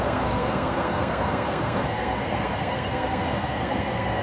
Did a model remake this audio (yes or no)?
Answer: yes